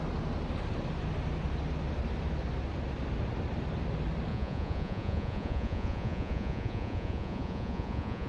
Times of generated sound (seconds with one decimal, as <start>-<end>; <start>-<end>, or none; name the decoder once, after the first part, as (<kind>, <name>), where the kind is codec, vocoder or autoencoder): 4.3-8.3 (vocoder, Vocos)